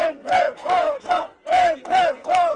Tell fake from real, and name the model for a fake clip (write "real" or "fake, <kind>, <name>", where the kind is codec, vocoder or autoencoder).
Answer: fake, codec, SNAC